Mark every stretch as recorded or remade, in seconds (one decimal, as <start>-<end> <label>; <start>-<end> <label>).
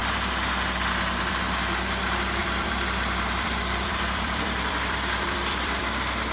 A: 0.0-2.4 recorded; 2.4-5.8 remade; 5.8-6.3 recorded